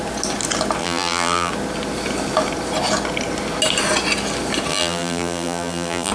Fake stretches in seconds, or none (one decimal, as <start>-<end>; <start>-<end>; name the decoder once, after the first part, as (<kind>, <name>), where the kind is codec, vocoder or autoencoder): 0.8-1.5 (vocoder, BigVGAN v2); 4.7-6.1